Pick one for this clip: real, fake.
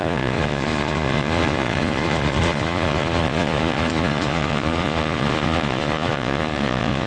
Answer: fake